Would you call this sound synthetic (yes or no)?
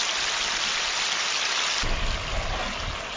no